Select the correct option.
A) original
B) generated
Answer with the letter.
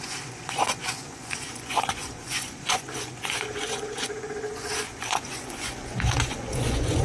B